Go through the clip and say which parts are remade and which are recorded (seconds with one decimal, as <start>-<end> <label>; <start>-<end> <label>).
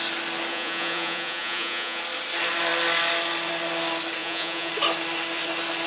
0.0-0.5 recorded; 0.5-2.0 remade; 2.0-4.2 recorded; 4.2-4.7 remade; 4.7-5.9 recorded